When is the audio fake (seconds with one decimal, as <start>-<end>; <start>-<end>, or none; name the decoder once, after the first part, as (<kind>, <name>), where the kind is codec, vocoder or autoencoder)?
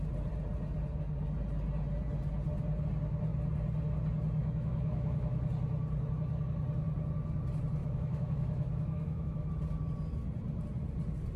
4.4-5.5 (autoencoder, DAC-VAE); 7.8-9.5